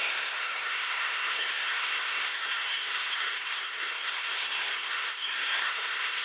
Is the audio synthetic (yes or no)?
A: yes